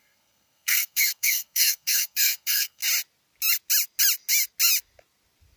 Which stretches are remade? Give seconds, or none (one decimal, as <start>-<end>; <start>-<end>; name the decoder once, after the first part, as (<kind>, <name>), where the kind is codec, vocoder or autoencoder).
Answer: 0.0-2.8 (codec, SNAC)